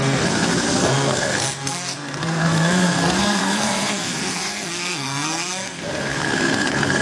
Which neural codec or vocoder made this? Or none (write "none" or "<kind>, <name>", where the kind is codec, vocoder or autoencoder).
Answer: codec, SNAC